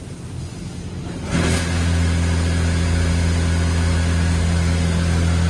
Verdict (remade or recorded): recorded